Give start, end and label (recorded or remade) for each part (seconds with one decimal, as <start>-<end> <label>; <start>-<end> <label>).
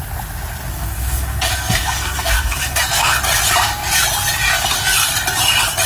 0.0-0.7 recorded; 0.7-3.2 remade; 3.2-5.9 recorded